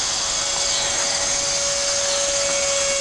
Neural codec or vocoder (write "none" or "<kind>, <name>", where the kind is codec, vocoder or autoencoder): none